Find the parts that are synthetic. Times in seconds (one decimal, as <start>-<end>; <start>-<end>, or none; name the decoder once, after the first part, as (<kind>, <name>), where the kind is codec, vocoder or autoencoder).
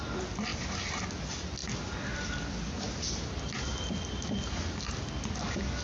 0.5-1.0 (vocoder, BigVGAN v2)